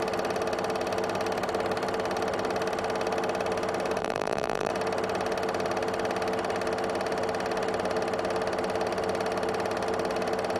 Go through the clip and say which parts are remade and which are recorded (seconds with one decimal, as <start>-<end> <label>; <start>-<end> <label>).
0.0-4.0 recorded; 4.0-4.7 remade; 4.7-10.6 recorded